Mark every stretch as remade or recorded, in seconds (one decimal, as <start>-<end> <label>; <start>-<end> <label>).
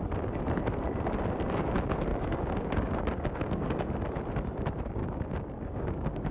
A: 0.0-2.1 recorded; 2.1-3.8 remade; 3.8-5.0 recorded; 5.0-6.3 remade